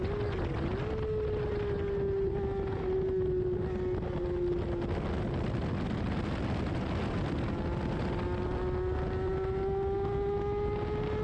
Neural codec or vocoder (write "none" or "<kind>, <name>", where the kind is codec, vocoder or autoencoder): none